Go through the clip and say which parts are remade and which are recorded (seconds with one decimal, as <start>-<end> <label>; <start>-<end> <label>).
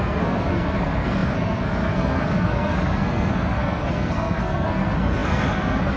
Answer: 0.0-6.0 remade